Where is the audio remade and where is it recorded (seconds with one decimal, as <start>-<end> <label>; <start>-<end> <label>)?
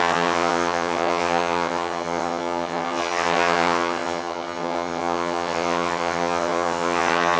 0.0-7.4 remade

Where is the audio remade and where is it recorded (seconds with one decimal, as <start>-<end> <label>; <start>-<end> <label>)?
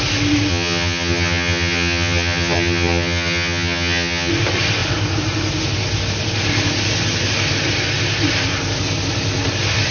0.0-0.5 recorded; 0.5-4.3 remade; 4.3-9.9 recorded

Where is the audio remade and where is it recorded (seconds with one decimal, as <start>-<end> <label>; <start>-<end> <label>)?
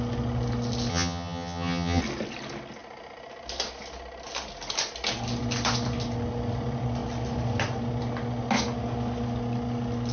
0.0-0.9 recorded; 0.9-2.0 remade; 2.0-10.1 recorded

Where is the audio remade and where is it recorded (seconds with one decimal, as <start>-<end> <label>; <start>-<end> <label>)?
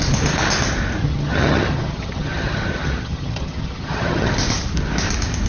0.0-1.0 recorded; 1.0-4.3 remade; 4.3-5.5 recorded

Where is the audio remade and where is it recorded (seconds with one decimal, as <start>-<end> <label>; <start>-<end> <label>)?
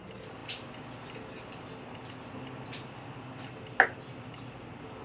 0.0-5.0 recorded